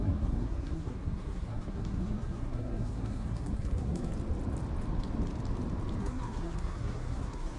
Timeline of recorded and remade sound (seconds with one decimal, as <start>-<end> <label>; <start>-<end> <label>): 0.0-4.1 remade; 4.1-6.0 recorded; 6.0-7.6 remade